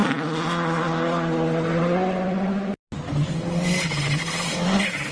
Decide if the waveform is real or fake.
real